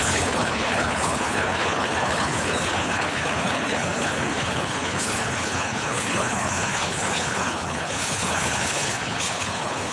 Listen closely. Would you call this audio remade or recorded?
remade